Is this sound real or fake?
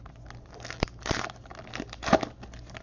real